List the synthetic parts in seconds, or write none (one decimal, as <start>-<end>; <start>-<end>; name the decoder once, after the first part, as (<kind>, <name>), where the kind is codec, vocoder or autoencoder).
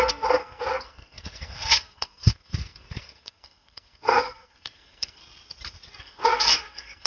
0.0-5.2 (codec, SNAC); 6.0-7.1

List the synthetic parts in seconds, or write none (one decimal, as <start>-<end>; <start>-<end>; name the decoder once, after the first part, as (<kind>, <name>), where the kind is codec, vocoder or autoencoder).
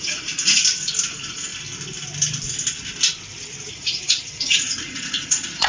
0.0-0.6 (vocoder, Vocos); 1.1-1.5; 3.7-5.7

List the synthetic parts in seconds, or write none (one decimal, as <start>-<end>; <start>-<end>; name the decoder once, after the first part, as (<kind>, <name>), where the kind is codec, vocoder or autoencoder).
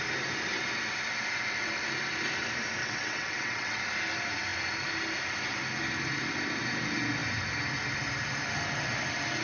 2.8-3.8 (vocoder, WaveNeXt)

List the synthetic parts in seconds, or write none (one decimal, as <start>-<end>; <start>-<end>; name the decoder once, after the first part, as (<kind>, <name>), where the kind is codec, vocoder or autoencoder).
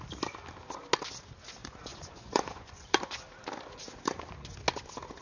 1.6-3.2 (vocoder, Vocos)